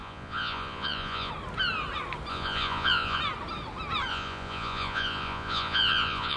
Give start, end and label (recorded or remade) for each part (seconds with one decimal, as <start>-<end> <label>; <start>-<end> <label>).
0.0-1.3 remade; 1.3-2.3 recorded; 2.3-3.2 remade; 3.2-4.1 recorded; 4.1-6.4 remade